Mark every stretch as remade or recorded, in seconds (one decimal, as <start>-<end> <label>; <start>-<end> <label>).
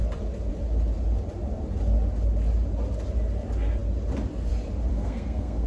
0.0-4.9 recorded; 4.9-5.7 remade